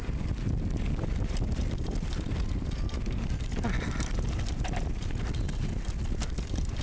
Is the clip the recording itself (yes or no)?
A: yes